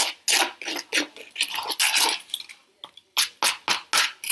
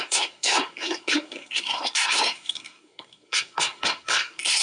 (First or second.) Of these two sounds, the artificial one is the second